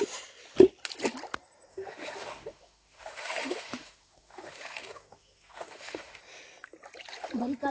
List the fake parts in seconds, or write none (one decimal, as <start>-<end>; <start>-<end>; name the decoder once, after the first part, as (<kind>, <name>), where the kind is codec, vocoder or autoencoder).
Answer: 1.7-6.2 (autoencoder, DAC-VAE)